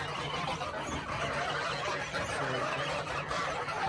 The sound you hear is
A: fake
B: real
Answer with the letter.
B